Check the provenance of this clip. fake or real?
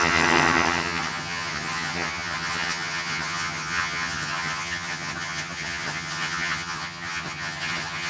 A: fake